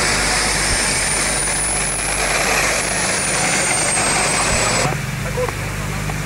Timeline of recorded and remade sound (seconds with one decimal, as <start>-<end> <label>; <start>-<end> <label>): 0.0-1.4 remade; 1.4-5.2 recorded; 5.2-6.3 remade